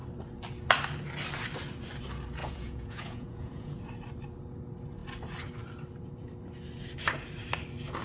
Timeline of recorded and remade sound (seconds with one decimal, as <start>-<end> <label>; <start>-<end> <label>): 0.0-2.4 recorded; 2.4-3.8 remade; 3.8-8.0 recorded